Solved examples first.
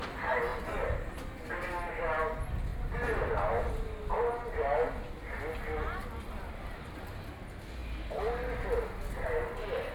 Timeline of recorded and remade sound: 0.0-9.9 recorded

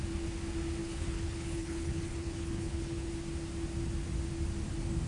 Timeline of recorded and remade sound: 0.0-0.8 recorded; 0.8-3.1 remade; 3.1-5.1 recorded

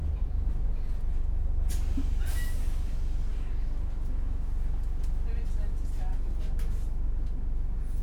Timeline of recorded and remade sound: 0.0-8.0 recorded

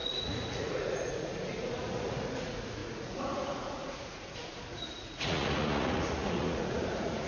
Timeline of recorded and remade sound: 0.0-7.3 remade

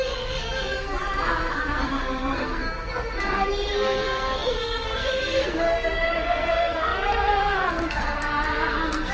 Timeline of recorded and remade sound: 0.0-9.1 remade

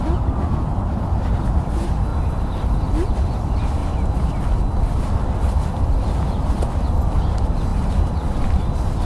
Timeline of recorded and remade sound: 0.0-9.0 recorded

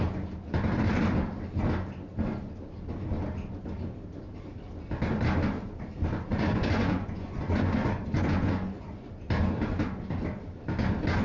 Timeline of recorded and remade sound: 0.0-6.3 recorded; 6.3-9.1 remade; 9.1-11.2 recorded